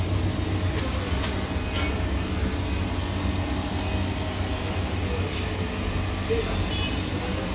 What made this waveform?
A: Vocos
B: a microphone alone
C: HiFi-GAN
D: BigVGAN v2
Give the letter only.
B